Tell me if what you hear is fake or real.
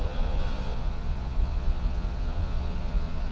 fake